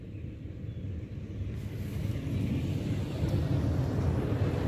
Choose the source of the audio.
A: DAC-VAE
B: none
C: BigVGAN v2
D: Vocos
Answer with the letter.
B